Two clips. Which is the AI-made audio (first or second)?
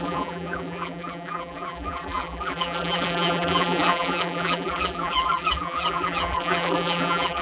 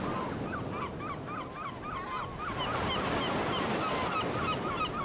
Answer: first